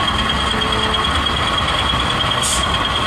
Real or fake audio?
real